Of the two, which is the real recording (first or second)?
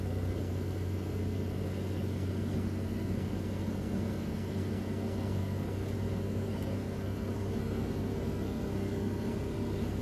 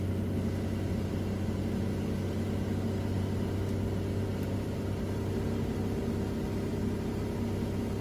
second